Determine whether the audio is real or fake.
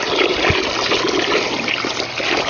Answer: real